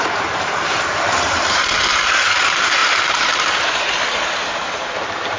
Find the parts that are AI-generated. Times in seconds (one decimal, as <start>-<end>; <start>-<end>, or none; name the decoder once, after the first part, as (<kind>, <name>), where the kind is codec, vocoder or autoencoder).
0.0-1.9 (vocoder, BigVGAN v2); 2.4-5.4